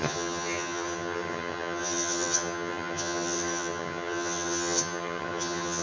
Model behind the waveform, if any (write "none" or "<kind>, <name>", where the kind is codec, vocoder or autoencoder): vocoder, HiFi-GAN